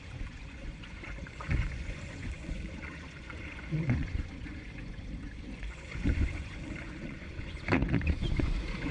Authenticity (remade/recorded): remade